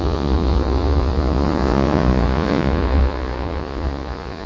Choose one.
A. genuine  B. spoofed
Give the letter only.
B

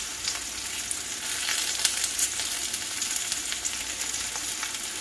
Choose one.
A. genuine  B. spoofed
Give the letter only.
A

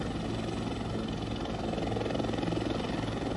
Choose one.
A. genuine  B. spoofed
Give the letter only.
A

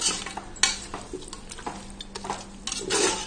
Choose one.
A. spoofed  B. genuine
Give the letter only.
B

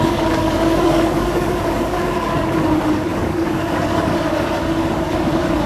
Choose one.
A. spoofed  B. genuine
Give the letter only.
A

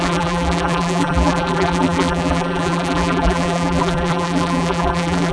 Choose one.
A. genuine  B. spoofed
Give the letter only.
B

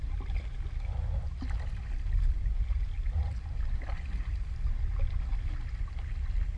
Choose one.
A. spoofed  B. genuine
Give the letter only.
B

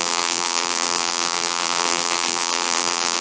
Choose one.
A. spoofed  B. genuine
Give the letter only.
A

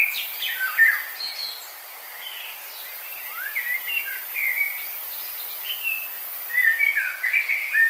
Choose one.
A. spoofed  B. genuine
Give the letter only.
B